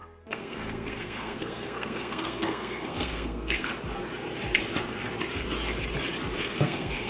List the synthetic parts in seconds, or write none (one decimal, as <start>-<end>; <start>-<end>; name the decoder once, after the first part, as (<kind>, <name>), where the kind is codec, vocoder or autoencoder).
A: 0.0-3.7 (codec, SNAC); 6.4-7.1